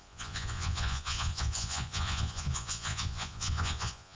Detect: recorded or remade remade